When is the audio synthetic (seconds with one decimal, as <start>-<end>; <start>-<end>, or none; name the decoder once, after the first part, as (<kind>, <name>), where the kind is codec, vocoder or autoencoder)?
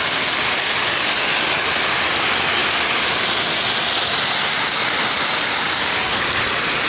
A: none